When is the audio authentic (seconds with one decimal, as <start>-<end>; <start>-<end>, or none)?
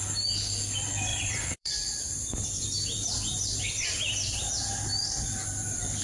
0.0-1.1; 4.4-6.0